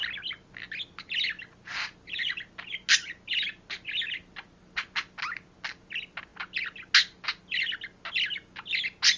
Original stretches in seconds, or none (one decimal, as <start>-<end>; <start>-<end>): 0.0-9.2